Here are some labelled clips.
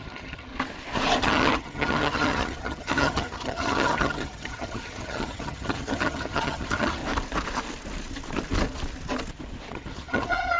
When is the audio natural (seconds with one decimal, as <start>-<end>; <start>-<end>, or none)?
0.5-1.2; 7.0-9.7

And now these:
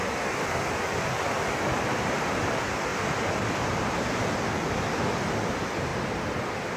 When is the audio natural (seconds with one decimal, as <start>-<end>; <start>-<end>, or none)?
0.0-6.8

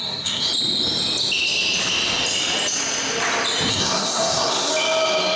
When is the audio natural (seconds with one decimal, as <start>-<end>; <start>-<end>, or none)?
0.5-3.7; 4.7-5.4

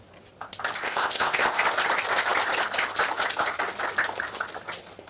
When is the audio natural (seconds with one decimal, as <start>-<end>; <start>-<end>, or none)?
0.0-0.8; 1.6-5.1